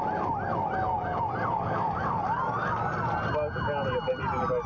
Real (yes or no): yes